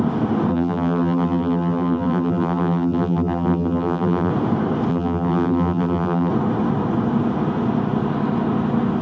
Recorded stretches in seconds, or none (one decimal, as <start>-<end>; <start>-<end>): 0.0-0.5; 4.3-4.9; 6.3-9.0